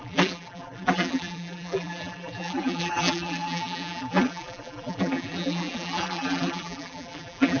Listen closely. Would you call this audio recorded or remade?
remade